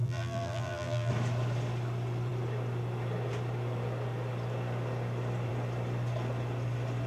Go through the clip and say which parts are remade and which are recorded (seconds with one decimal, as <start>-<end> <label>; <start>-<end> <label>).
0.0-1.1 remade; 1.1-7.1 recorded